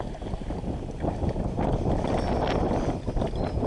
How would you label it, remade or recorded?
recorded